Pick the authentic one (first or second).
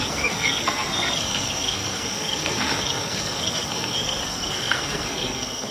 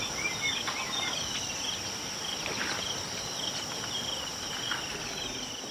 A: second